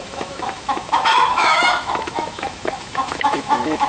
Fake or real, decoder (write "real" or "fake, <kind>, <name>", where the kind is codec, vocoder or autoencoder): fake, autoencoder, DAC-VAE